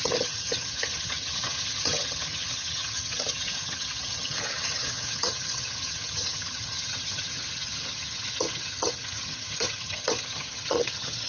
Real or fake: fake